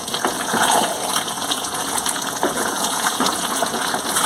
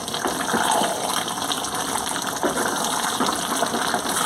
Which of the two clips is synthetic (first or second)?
first